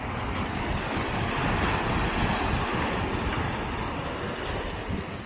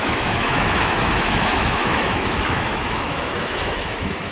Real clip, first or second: first